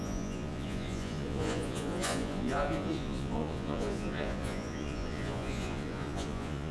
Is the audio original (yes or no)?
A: no